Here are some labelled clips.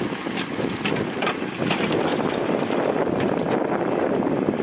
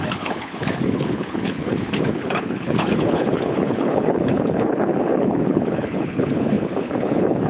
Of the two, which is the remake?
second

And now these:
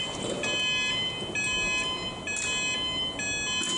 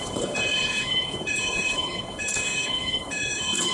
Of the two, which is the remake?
second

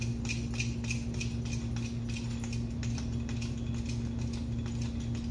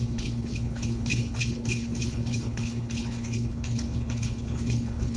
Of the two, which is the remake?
second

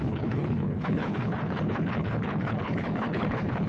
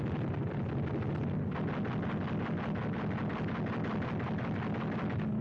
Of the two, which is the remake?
first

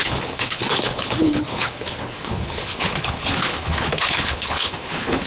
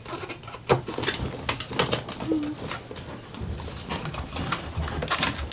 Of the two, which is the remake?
first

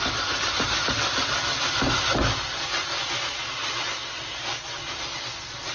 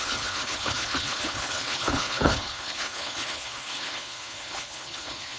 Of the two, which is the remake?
second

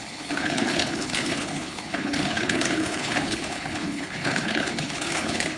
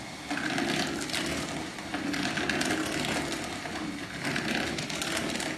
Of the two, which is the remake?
first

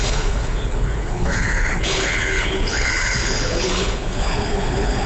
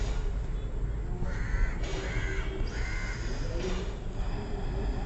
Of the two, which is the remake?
first